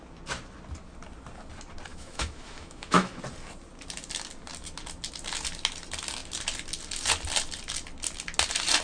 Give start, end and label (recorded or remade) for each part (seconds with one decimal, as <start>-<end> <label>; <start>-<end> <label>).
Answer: 0.0-1.9 recorded; 1.9-3.2 remade; 3.2-8.8 recorded